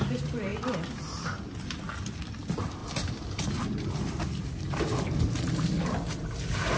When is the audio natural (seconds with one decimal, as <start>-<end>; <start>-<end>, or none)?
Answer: 0.0-6.8